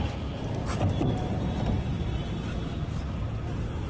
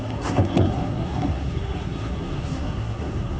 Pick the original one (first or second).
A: first